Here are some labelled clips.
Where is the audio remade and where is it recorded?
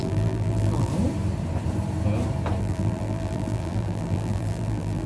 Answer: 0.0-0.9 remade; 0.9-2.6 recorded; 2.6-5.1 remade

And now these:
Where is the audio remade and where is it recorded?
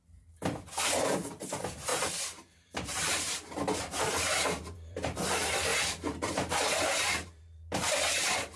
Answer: 0.0-1.9 recorded; 1.9-5.3 remade; 5.3-5.7 recorded; 5.7-8.6 remade